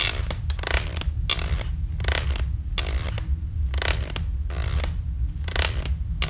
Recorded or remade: recorded